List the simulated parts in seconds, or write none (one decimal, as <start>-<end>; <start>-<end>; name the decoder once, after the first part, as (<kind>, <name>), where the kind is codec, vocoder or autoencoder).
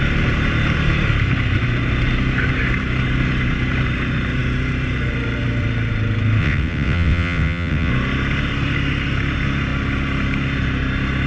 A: 6.4-7.9 (vocoder, WaveNeXt)